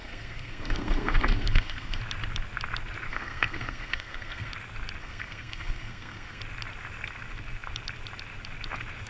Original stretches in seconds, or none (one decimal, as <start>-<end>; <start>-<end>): 2.0-3.1; 4.5-5.0; 6.4-9.1